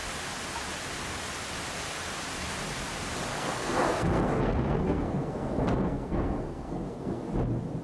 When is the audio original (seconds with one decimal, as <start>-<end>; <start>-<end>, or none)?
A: 0.0-3.3; 7.3-7.8